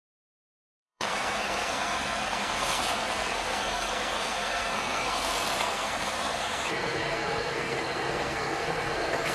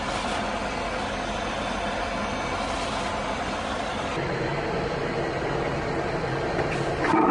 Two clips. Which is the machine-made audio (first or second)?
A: first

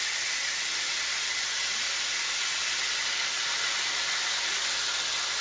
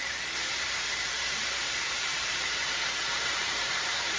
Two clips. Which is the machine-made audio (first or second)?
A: second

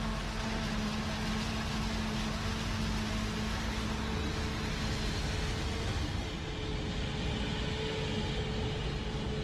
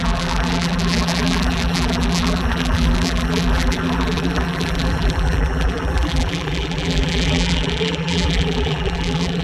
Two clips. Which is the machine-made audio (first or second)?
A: second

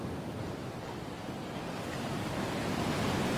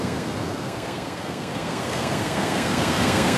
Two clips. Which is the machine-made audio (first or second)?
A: second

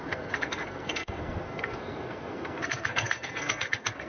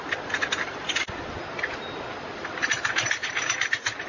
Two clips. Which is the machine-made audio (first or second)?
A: first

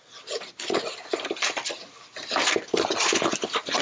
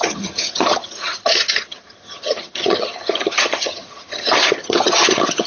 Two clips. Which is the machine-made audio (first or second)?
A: second